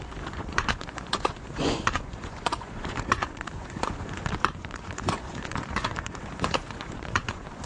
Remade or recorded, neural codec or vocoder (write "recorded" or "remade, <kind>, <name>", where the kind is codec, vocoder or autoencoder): remade, vocoder, Vocos